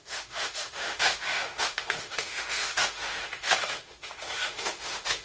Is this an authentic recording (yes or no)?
no